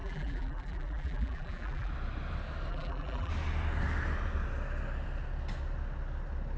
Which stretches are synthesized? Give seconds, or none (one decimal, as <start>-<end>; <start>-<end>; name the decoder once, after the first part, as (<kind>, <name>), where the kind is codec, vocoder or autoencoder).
0.0-1.9 (vocoder, BigVGAN v2); 2.7-3.3